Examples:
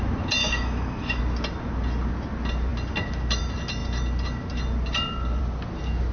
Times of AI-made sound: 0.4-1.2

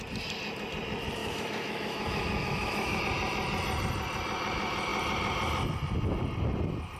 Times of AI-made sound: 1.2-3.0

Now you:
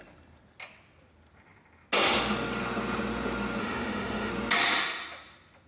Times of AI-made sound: 3.6-4.3

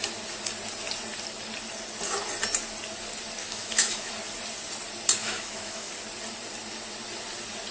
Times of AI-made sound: 3.4-4.1; 5.2-5.9

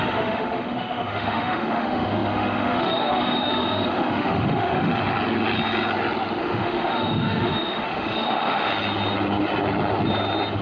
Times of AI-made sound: 0.0-4.9; 6.4-8.7

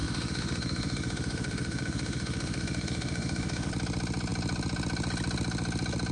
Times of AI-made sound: 0.0-3.7

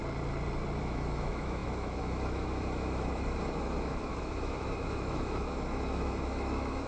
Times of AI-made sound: 0.8-6.9